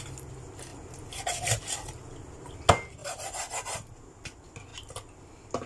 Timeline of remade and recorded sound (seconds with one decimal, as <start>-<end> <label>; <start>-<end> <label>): 0.0-5.7 recorded